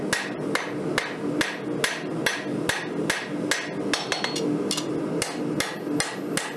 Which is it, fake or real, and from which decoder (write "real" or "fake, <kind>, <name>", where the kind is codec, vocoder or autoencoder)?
real